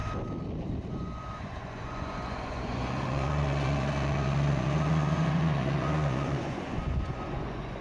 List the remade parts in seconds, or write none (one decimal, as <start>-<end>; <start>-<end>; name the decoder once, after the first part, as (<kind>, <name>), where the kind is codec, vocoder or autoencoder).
0.9-7.8 (vocoder, Vocos)